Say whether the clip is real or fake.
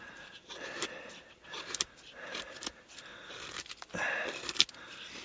real